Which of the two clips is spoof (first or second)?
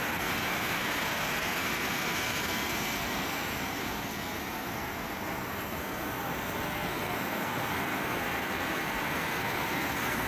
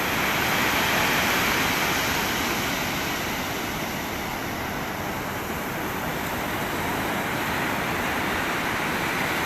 first